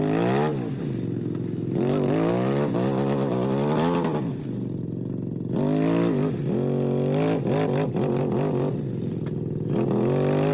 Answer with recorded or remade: recorded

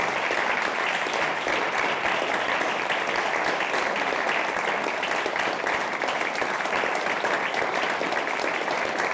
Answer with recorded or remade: recorded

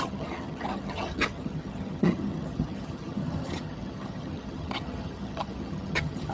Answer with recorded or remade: remade